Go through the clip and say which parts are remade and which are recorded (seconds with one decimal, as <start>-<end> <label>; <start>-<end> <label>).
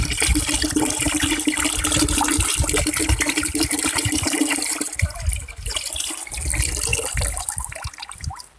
0.0-8.6 recorded